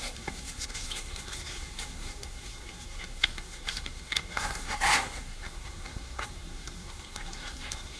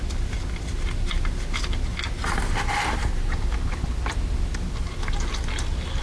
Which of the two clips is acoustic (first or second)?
second